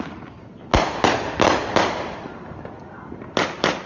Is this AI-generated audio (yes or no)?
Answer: no